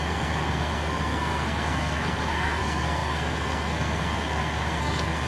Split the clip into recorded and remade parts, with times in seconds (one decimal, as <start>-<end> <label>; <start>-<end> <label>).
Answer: 0.0-5.3 remade